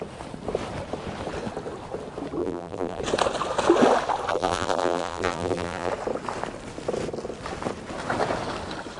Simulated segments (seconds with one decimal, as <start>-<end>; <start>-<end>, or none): 2.4-3.0; 4.3-5.9